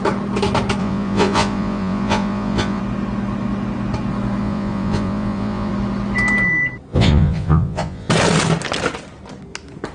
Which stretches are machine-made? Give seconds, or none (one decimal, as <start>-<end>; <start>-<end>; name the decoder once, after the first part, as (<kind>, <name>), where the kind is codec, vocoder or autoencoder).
0.8-2.8 (vocoder, Vocos); 4.4-5.7; 6.9-8.1